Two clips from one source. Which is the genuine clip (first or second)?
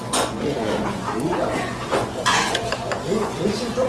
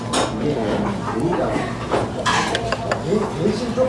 second